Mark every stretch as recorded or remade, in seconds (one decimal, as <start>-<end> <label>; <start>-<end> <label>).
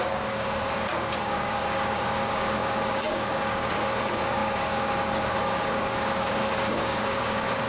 0.0-7.7 remade